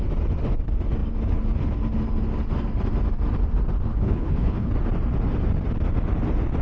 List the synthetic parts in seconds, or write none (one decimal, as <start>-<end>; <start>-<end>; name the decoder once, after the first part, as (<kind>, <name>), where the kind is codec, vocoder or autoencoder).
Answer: 3.9-4.7 (codec, HILCodec)